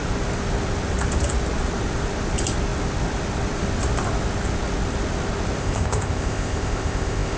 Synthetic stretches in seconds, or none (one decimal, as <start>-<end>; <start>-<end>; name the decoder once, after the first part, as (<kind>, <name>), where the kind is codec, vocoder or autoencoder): 5.6-7.4 (codec, ZipCodec)